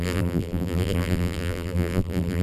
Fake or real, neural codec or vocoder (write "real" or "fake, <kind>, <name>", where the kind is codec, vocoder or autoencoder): fake, vocoder, BigVGAN v2